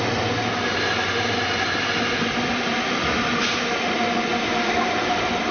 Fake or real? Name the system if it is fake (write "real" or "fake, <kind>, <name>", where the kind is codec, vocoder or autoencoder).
real